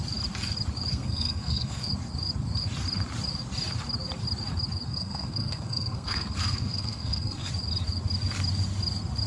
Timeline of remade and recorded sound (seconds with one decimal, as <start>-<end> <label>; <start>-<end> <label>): 0.0-0.9 recorded; 0.9-1.9 remade; 1.9-4.9 recorded; 4.9-7.5 remade; 7.5-9.3 recorded